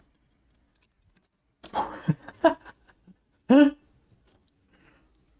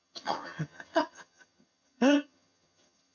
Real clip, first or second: first